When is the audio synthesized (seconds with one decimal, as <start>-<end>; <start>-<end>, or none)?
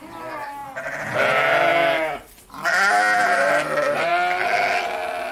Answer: none